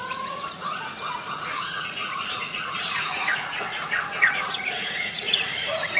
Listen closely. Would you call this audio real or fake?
fake